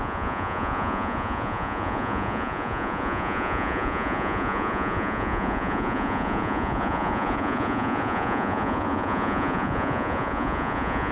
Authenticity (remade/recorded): remade